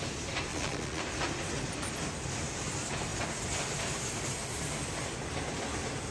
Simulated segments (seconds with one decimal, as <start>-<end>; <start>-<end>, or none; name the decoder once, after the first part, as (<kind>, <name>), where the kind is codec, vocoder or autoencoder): 0.5-1.0 (vocoder, Vocos)